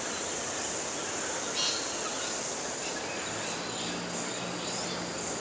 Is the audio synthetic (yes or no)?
no